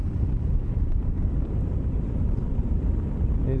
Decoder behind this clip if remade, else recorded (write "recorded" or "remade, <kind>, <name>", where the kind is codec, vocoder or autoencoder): remade, vocoder, BigVGAN v2